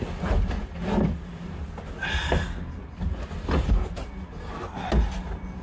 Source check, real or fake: real